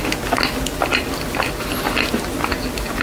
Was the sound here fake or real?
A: real